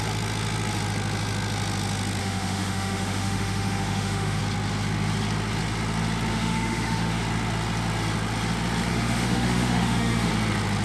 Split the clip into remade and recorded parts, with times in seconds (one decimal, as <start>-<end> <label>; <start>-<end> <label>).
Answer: 0.0-2.2 recorded; 2.2-4.4 remade; 4.4-6.3 recorded; 6.3-7.2 remade; 7.2-8.9 recorded; 8.9-10.3 remade; 10.3-10.8 recorded